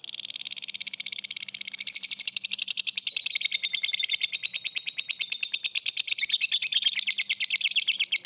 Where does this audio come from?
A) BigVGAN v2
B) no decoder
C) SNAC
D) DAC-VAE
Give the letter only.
B